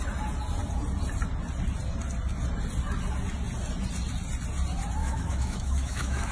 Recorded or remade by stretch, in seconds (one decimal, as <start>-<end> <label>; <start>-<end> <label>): 0.0-5.0 recorded; 5.0-6.3 remade